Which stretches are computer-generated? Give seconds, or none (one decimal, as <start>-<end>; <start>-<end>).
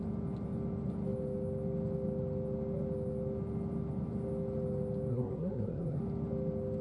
5.1-6.0